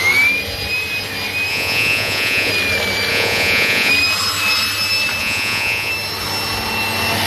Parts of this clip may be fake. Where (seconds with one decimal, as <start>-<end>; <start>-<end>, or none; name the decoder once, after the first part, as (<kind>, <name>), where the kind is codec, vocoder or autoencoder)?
1.5-2.5 (vocoder, Vocos); 3.1-3.9; 5.2-5.9